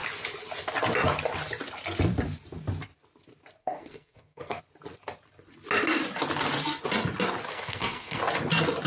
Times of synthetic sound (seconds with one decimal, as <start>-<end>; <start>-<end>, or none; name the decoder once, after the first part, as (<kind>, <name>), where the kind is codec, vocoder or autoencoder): 3.6-4.6 (codec, SNAC); 7.5-8.2